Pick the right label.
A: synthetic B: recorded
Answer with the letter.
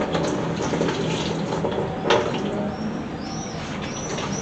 B